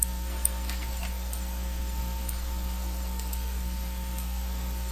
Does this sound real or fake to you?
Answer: fake